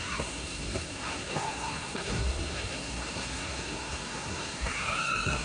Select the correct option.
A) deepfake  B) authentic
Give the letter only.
A